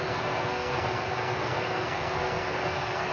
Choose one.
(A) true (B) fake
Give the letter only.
B